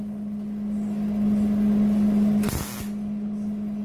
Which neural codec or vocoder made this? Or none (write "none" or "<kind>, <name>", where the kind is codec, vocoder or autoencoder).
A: none